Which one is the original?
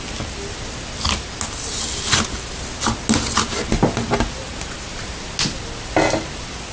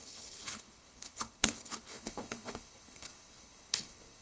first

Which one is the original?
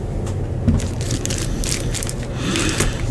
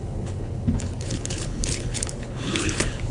first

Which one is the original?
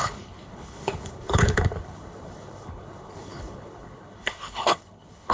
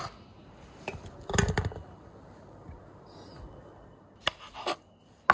second